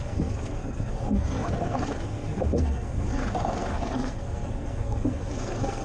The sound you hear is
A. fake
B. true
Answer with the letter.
A